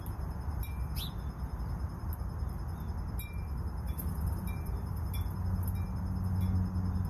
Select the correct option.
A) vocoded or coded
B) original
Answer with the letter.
B